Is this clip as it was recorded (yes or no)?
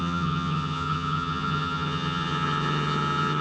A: no